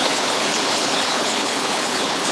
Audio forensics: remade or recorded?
remade